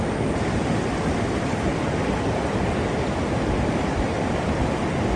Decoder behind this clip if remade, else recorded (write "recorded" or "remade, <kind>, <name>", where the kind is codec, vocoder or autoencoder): recorded